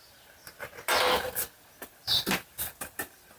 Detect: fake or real real